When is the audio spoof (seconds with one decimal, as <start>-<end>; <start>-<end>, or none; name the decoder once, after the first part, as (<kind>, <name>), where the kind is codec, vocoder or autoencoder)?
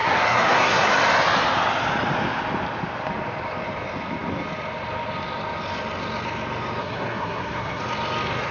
0.0-0.9 (codec, SNAC); 6.8-7.8